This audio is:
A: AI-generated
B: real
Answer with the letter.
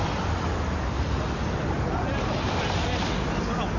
B